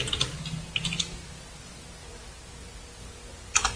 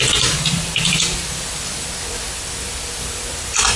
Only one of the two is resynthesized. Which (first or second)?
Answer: second